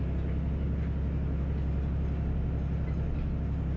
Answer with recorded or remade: recorded